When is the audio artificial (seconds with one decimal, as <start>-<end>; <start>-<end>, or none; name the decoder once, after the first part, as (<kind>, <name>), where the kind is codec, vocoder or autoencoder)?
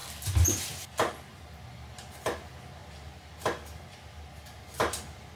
none